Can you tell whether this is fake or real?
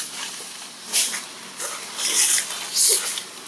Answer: real